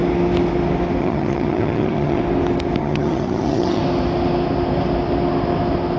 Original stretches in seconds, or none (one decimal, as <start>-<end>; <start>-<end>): 0.0-1.0; 2.2-2.8; 3.8-6.0